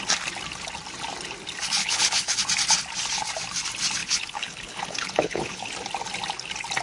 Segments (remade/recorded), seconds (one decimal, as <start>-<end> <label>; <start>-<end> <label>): 0.0-1.8 recorded; 1.8-2.4 remade; 2.4-4.0 recorded; 4.0-5.7 remade; 5.7-6.8 recorded